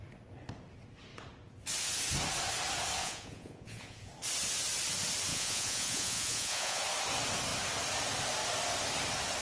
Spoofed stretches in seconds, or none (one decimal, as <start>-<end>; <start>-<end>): 3.0-4.1; 5.3-6.8